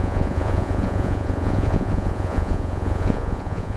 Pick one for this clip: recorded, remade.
remade